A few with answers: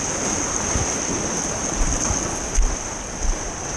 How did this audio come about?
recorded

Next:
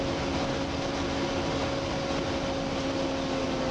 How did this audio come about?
recorded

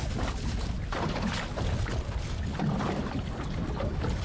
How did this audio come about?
recorded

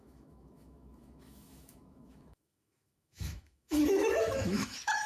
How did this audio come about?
remade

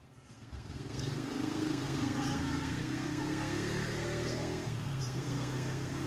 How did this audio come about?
remade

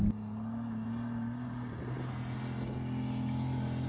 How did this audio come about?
recorded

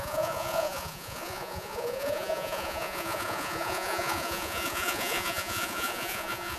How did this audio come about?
remade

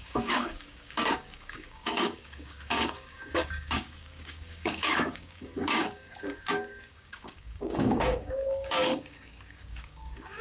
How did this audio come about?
remade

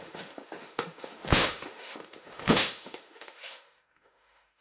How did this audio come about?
remade